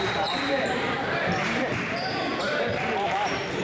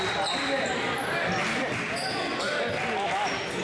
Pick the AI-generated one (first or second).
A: first